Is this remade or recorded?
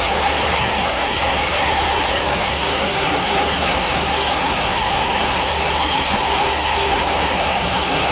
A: remade